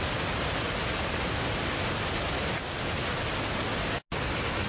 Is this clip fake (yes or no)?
no